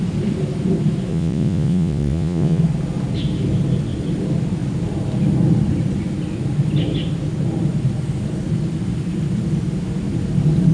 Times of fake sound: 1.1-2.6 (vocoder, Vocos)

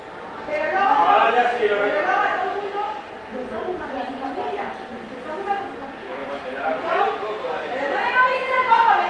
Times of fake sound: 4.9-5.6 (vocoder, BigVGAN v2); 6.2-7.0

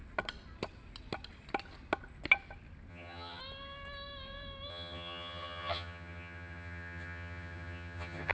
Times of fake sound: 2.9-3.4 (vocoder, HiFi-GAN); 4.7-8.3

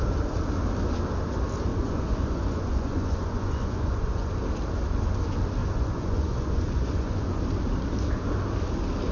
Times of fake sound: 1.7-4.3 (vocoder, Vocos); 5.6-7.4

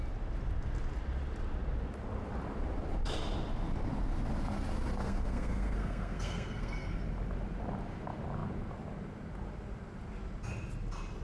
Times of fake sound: 5.0-7.0 (codec, SNAC)

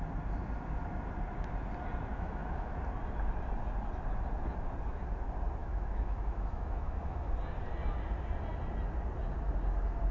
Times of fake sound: 2.1-2.8 (autoencoder, DAC-VAE); 5.6-7.3

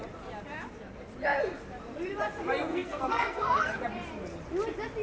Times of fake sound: 2.7-3.8 (codec, SNAC)

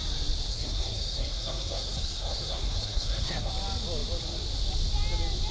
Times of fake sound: 0.5-3.5 (codec, SNAC)